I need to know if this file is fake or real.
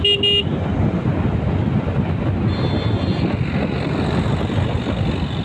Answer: real